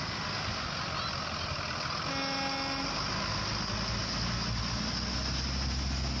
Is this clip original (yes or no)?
yes